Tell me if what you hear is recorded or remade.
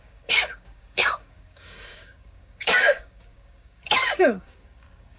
remade